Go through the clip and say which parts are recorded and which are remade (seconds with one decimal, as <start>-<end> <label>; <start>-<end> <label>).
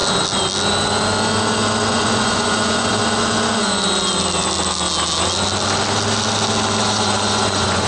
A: 0.0-1.9 recorded; 1.9-3.0 remade; 3.0-6.8 recorded; 6.8-7.9 remade